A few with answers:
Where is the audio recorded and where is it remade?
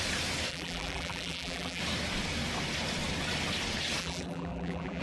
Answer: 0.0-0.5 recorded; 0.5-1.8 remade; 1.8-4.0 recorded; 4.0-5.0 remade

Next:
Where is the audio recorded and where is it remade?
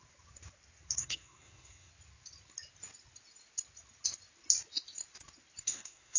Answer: 0.0-1.0 recorded; 1.0-1.9 remade; 1.9-5.6 recorded; 5.6-6.2 remade